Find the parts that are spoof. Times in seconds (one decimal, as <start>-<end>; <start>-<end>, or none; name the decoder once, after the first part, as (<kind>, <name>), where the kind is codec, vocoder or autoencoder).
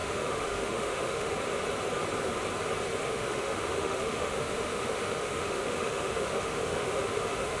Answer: 0.0-1.3 (autoencoder, DAC-VAE); 2.9-7.6